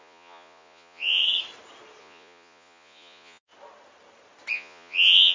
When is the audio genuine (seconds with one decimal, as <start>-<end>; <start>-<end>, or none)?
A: 1.2-2.0; 3.5-4.5